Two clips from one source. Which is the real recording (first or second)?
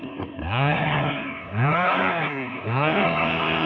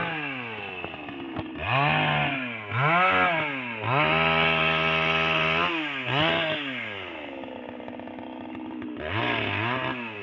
second